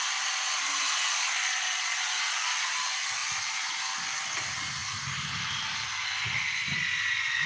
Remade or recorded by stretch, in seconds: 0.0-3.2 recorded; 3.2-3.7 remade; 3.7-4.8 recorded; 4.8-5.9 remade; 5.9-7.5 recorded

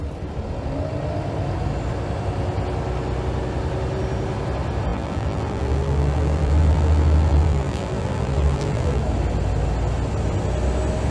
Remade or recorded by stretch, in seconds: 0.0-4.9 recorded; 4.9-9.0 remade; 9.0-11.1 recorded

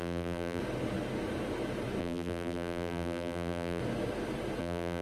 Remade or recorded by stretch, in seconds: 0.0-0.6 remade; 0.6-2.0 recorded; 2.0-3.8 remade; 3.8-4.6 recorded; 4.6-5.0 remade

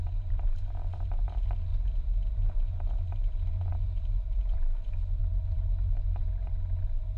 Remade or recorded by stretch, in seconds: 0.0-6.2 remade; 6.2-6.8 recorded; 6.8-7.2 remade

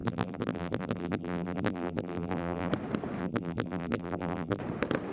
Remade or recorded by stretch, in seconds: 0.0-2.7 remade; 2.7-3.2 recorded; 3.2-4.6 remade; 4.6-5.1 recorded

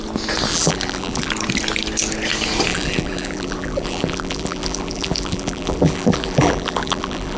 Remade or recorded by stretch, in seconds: 0.0-0.5 recorded; 0.5-1.3 remade; 1.3-2.7 recorded; 2.7-7.4 remade

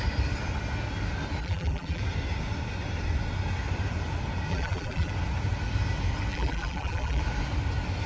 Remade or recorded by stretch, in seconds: 0.0-1.4 recorded; 1.4-2.0 remade; 2.0-4.5 recorded; 4.5-5.1 remade; 5.1-6.3 recorded; 6.3-7.2 remade; 7.2-8.1 recorded

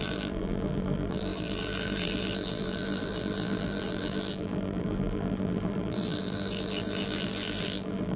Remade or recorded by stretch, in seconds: 0.0-8.2 remade